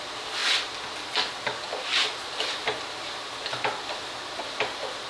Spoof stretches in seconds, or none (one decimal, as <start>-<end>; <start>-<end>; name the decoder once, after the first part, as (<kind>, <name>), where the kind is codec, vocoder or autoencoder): none